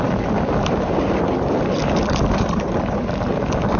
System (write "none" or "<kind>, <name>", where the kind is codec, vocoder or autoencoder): none